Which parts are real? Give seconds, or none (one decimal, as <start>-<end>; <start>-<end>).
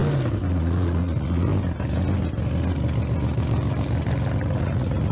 0.0-0.5; 1.5-4.6